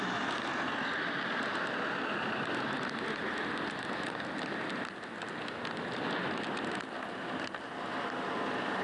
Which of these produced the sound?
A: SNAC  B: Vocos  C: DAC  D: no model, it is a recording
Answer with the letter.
D